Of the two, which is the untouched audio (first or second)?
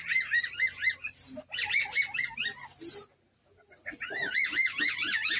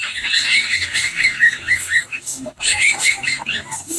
first